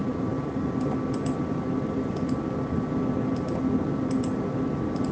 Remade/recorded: recorded